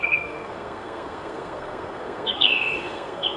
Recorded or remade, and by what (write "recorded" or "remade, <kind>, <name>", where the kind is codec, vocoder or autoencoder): remade, codec, SNAC